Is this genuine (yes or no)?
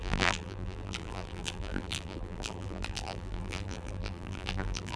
no